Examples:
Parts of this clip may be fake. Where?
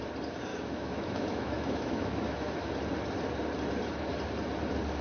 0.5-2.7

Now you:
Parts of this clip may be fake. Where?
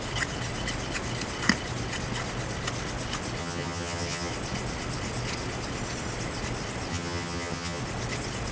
3.4-4.3; 6.9-7.8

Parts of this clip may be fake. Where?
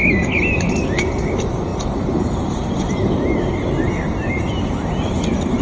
none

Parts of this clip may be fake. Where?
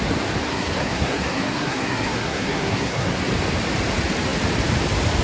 0.5-3.2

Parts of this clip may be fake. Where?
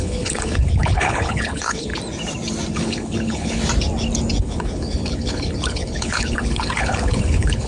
0.0-1.9; 2.7-3.6; 4.4-7.7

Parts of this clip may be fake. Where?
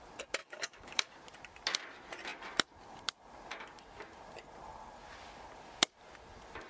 0.4-1.1